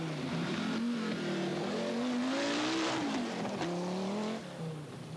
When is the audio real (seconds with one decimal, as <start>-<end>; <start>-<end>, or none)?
0.0-5.2